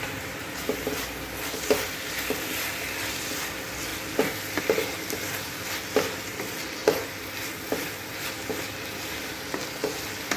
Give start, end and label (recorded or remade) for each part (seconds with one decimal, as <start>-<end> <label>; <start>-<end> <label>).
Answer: 0.0-10.4 recorded